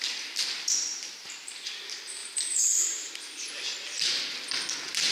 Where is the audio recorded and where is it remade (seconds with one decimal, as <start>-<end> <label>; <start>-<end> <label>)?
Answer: 0.0-0.9 recorded; 0.9-1.7 remade; 1.7-2.2 recorded; 2.2-3.1 remade; 3.1-5.1 recorded